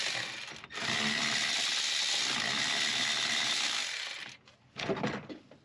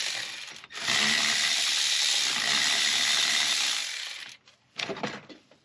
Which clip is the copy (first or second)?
second